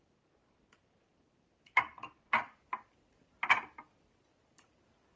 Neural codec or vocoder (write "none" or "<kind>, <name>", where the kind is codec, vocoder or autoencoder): none